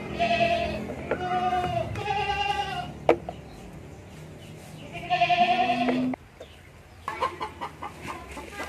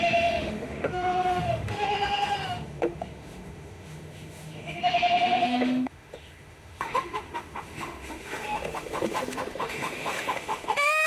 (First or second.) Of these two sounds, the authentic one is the first